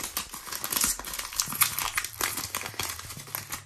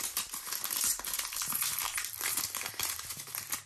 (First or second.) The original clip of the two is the first